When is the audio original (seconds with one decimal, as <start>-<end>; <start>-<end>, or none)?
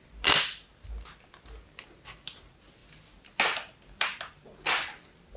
0.0-5.4